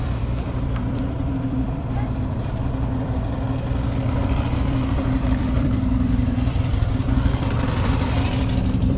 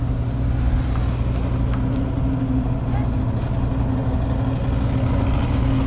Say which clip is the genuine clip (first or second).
second